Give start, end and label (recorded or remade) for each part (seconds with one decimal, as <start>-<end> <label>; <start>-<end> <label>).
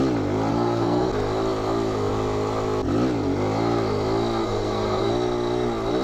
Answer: 0.0-0.5 recorded; 0.5-1.1 remade; 1.1-4.4 recorded; 4.4-5.1 remade; 5.1-6.0 recorded